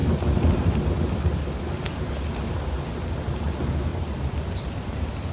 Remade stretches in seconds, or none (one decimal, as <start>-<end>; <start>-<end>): 0.0-3.2; 3.9-4.6